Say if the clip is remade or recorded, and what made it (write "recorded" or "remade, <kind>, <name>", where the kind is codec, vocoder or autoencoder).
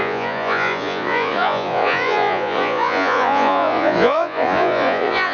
remade, vocoder, Vocos